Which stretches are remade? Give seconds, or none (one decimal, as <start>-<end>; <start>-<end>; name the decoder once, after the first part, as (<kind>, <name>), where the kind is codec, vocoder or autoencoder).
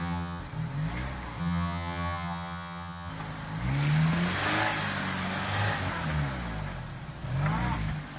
0.0-0.4 (vocoder, HiFi-GAN); 1.4-3.1